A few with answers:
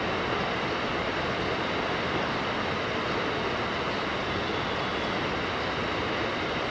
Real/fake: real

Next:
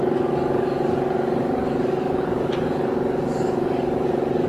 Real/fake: fake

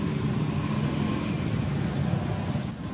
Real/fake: real